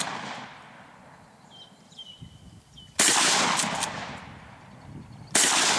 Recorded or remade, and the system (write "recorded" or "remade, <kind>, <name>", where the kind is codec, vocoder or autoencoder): remade, vocoder, BigVGAN v2